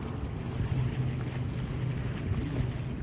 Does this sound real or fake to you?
real